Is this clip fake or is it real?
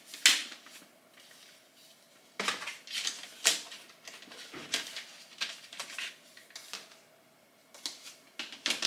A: real